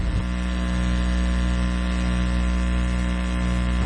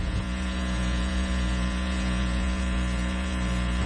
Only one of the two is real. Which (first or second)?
first